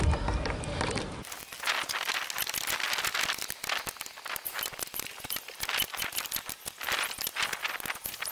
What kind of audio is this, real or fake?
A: real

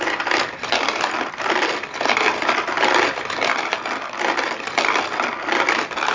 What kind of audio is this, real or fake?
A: real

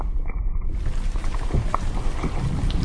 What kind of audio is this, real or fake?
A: fake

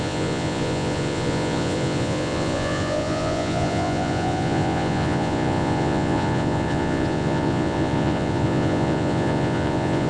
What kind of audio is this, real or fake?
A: fake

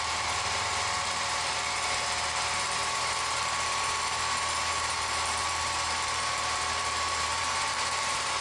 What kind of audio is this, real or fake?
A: fake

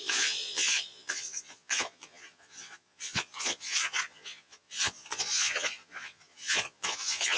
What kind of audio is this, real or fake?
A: fake